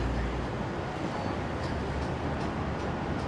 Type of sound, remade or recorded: recorded